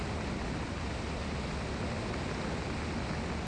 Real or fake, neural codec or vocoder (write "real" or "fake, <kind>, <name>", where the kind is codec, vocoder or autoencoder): real